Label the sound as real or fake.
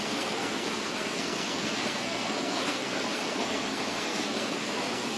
fake